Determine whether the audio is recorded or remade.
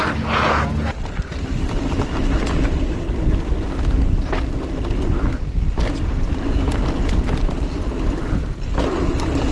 recorded